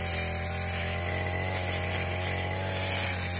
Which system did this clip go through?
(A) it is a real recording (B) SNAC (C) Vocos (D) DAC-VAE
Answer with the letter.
A